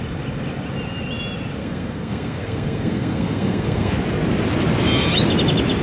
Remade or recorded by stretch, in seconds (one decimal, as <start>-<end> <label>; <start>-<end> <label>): 0.0-1.6 recorded; 1.6-3.9 remade; 3.9-5.8 recorded